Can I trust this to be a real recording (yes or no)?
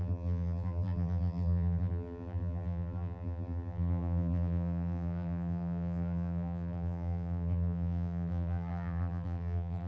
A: no